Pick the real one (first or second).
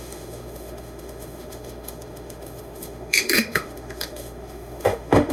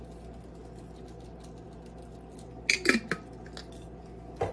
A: second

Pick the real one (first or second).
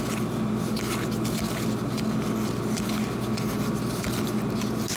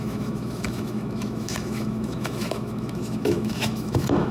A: first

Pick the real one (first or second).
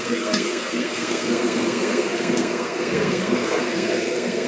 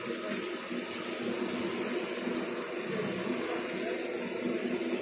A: second